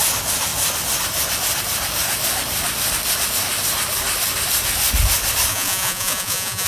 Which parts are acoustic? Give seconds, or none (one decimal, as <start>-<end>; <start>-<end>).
0.0-5.5